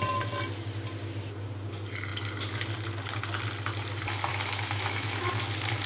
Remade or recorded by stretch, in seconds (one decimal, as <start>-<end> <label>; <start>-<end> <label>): 0.0-4.3 recorded; 4.3-5.3 remade; 5.3-5.9 recorded